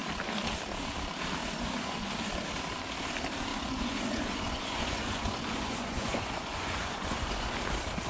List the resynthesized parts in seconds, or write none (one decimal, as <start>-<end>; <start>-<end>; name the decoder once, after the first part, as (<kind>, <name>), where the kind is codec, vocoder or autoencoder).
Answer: 1.4-2.1 (vocoder, Vocos); 3.5-7.5